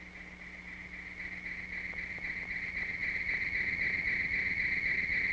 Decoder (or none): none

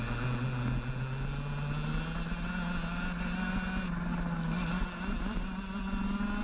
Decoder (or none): none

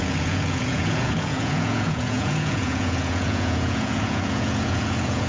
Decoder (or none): vocoder, Vocos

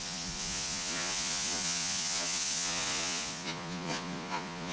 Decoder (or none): vocoder, Vocos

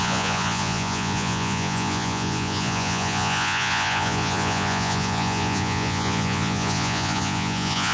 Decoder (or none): vocoder, Vocos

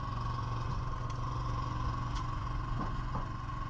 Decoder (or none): vocoder, Vocos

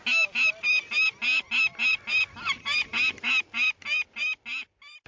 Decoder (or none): none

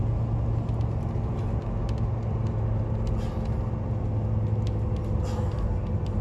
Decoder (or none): none